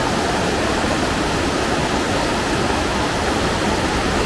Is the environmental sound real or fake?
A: real